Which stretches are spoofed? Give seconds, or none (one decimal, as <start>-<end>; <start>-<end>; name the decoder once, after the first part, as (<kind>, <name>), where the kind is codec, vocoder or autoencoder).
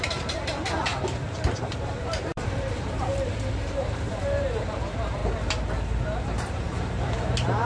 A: 0.0-0.9 (vocoder, BigVGAN v2); 1.7-5.2; 6.5-7.7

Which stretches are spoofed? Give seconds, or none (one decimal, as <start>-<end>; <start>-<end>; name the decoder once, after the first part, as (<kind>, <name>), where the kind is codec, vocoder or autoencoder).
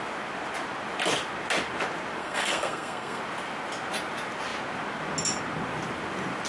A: 2.2-3.2 (codec, SNAC)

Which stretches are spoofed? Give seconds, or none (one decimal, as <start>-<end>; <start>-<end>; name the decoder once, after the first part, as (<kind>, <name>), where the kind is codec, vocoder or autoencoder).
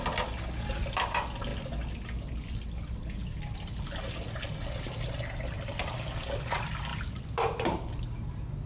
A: 6.9-8.0 (vocoder, BigVGAN v2)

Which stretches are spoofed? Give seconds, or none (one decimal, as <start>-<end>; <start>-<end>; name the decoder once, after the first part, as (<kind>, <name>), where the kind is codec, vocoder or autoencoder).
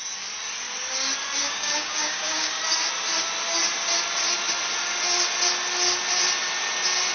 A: 1.4-2.6 (codec, DAC)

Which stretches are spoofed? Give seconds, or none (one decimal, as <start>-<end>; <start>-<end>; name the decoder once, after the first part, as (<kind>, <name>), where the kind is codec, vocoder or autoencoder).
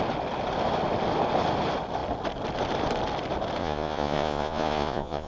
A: 3.6-5.3 (vocoder, Vocos)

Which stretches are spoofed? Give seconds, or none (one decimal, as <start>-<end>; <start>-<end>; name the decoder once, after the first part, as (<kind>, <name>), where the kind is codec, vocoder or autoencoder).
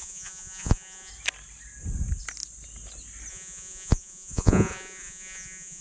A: 0.0-1.1 (vocoder, Vocos); 3.3-5.8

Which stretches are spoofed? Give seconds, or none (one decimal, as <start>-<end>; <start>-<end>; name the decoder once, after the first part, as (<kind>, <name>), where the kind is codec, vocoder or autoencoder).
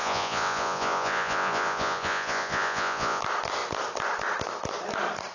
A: 0.0-3.2 (vocoder, Vocos)